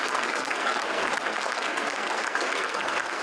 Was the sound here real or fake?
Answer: fake